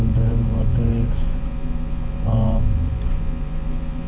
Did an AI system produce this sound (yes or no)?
yes